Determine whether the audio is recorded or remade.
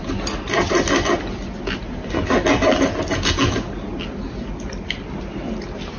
recorded